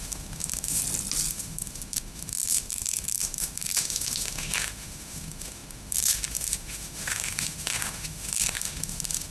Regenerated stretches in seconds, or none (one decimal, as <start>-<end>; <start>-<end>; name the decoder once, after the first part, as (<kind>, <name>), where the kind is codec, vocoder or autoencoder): 0.0-0.8 (autoencoder, DAC-VAE); 1.3-9.3

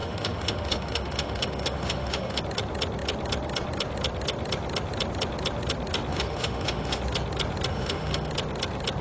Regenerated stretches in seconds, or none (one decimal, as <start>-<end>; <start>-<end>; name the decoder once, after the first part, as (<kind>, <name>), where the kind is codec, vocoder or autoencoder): 0.0-2.4 (autoencoder, DAC-VAE); 6.1-7.0; 7.7-8.3

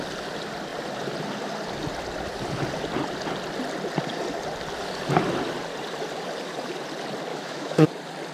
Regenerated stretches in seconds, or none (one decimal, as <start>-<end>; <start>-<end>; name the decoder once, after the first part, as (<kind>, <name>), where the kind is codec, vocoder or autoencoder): 7.3-7.9 (autoencoder, DAC-VAE)

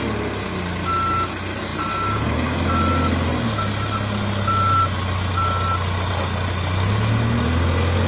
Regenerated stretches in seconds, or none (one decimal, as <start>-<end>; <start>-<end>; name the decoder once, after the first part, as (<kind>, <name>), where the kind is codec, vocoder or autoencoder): none

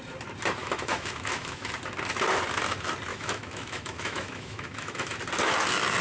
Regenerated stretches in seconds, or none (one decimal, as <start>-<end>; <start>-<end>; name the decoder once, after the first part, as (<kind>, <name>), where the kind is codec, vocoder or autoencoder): 0.6-1.7 (autoencoder, DAC-VAE); 3.1-5.2

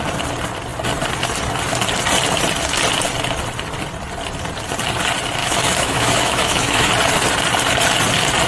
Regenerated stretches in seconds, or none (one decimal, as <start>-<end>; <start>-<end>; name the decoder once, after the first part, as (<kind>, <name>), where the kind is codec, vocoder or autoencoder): 5.4-6.9 (autoencoder, DAC-VAE)